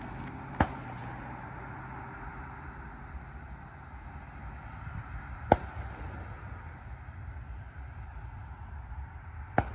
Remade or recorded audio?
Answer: recorded